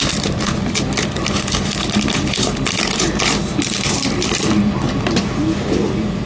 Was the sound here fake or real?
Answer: fake